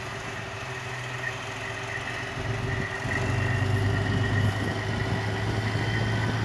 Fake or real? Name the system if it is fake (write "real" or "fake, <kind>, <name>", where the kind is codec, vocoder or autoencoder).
real